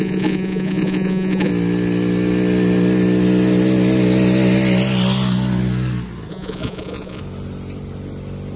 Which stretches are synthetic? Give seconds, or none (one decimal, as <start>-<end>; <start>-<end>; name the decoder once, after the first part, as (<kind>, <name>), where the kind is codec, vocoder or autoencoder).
0.0-1.5 (vocoder, Vocos); 6.3-7.2